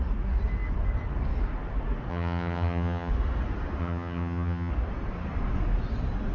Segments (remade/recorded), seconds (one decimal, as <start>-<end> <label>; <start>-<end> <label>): 0.0-2.1 recorded; 2.1-3.1 remade; 3.1-3.8 recorded; 3.8-4.7 remade; 4.7-6.3 recorded